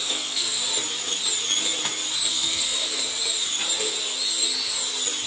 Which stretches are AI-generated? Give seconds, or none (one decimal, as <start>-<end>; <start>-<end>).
0.0-0.6; 2.3-2.9